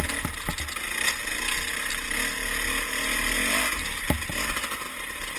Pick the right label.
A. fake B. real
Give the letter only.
B